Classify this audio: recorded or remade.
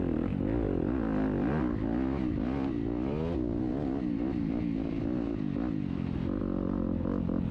recorded